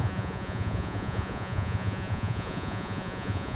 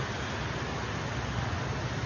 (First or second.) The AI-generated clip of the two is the first